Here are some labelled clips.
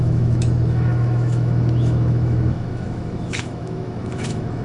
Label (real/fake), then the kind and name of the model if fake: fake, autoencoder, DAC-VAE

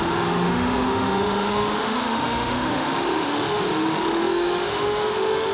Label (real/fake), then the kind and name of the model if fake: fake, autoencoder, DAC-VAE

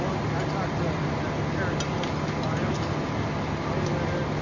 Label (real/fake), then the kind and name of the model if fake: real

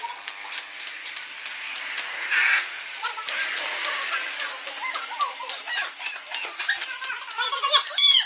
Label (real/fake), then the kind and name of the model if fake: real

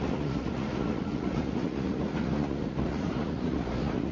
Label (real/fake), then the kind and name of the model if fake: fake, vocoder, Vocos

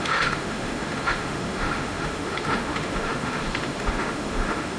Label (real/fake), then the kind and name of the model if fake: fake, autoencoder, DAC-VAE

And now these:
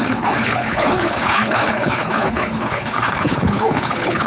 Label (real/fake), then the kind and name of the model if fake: fake, codec, HILCodec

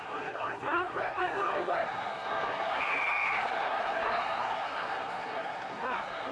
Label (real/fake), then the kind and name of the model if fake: fake, codec, SNAC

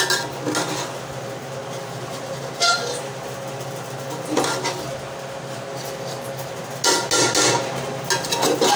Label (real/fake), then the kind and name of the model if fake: real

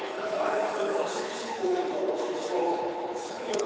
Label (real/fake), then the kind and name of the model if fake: fake, codec, HILCodec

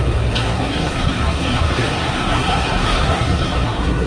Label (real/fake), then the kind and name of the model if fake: fake, codec, SNAC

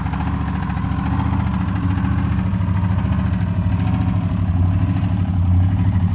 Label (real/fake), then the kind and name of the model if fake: real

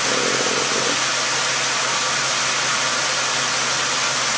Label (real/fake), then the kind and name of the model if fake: real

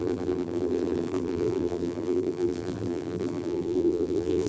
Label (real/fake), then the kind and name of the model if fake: fake, vocoder, BigVGAN v2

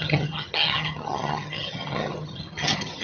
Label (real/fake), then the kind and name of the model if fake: fake, vocoder, HiFi-GAN